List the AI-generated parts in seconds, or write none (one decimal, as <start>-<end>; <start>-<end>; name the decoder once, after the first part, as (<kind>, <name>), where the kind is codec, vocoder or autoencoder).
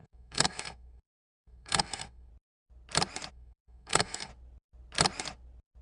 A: 0.0-2.3 (codec, SNAC); 3.3-4.3